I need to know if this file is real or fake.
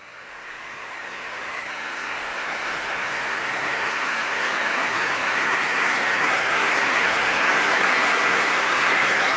fake